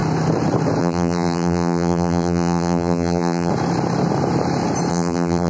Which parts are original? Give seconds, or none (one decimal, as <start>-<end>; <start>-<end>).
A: 0.0-0.8; 3.5-4.9